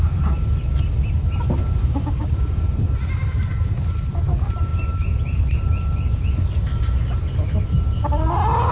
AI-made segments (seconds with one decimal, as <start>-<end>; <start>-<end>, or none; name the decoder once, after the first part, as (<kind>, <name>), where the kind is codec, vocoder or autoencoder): 1.8-2.6 (codec, DAC)